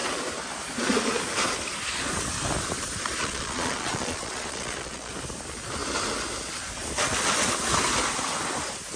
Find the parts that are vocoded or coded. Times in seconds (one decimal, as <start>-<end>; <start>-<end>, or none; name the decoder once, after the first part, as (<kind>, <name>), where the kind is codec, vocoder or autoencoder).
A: 3.2-5.1 (vocoder, Vocos)